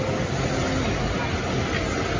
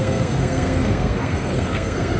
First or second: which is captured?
first